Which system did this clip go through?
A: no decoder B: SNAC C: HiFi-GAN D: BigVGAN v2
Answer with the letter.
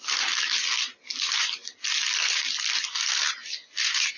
A